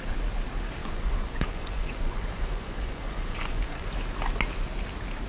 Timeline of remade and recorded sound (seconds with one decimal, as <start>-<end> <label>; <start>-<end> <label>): 0.0-0.8 recorded; 0.8-3.9 remade; 3.9-5.3 recorded

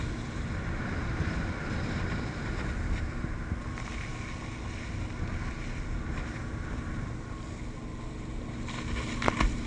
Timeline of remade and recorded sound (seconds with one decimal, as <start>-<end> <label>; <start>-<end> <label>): 0.0-9.7 recorded

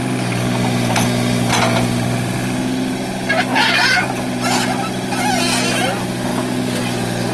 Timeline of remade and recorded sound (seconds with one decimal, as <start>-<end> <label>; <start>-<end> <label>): 0.0-3.5 recorded; 3.5-4.1 remade; 4.1-6.3 recorded; 6.3-6.8 remade; 6.8-7.3 recorded

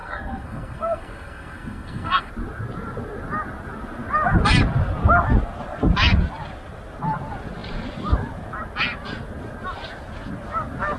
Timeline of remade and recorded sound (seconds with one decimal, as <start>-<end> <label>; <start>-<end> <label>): 0.0-2.3 remade; 2.3-11.0 recorded

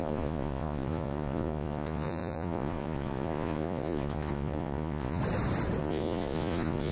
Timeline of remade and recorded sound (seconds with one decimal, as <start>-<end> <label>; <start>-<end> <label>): 0.0-5.2 remade; 5.2-5.8 recorded; 5.8-6.9 remade

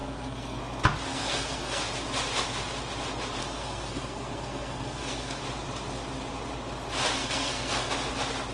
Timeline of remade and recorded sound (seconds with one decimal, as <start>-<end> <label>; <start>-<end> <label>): 0.0-0.6 remade; 0.6-1.1 recorded; 1.1-1.8 remade; 1.8-3.4 recorded; 3.4-5.4 remade; 5.4-7.2 recorded; 7.2-7.9 remade; 7.9-8.5 recorded

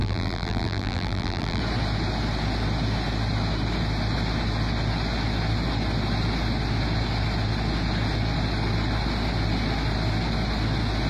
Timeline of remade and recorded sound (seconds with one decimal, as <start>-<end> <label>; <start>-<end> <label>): 0.0-1.6 remade; 1.6-11.1 recorded

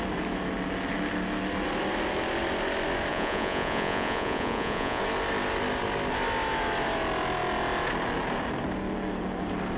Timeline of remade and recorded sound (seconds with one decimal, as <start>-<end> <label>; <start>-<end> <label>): 0.0-3.1 recorded; 3.1-5.0 remade; 5.0-9.8 recorded